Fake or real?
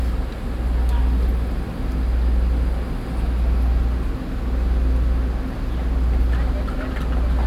real